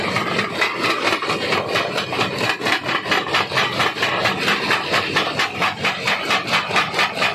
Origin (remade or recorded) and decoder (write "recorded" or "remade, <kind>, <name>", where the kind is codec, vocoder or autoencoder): recorded